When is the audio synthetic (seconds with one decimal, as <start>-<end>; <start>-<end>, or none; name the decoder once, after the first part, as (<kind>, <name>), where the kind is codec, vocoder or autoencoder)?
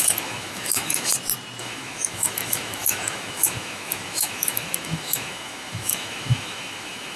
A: 0.0-1.1 (autoencoder, DAC-VAE); 1.6-7.2